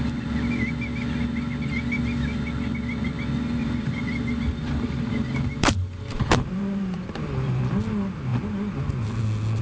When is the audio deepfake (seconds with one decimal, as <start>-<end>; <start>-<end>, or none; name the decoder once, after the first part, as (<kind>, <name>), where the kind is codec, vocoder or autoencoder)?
3.6-7.6 (vocoder, BigVGAN v2)